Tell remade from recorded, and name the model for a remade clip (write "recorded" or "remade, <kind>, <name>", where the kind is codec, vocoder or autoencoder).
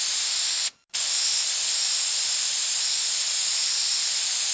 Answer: recorded